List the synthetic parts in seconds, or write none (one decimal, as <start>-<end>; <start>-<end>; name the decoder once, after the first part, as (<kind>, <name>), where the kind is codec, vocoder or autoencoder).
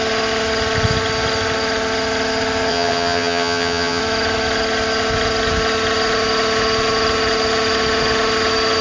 2.7-4.0 (vocoder, HiFi-GAN)